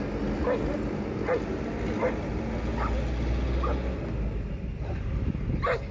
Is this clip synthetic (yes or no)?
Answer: no